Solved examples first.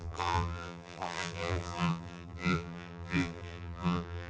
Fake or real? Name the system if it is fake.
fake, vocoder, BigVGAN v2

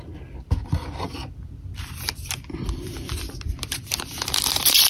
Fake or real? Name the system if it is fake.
fake, vocoder, BigVGAN v2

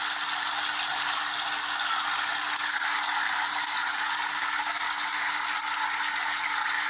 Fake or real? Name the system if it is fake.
real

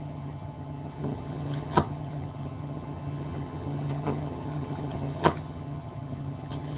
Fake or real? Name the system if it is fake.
fake, vocoder, HiFi-GAN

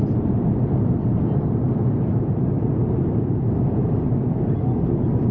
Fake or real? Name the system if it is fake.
real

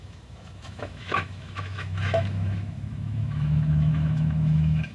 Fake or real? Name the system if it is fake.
fake, autoencoder, DAC-VAE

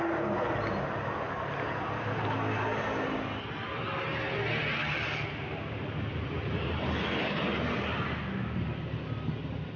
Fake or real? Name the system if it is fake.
real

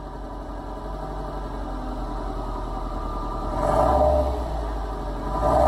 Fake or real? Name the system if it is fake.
real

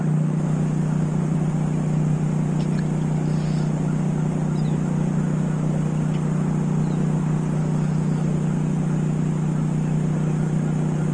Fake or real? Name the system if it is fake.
real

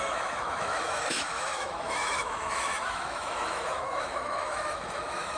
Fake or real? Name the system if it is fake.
fake, autoencoder, DAC-VAE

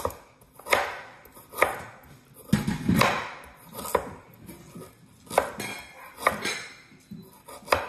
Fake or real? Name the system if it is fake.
real